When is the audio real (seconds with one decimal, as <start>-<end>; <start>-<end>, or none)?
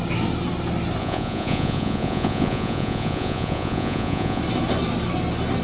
0.0-1.0; 4.4-5.6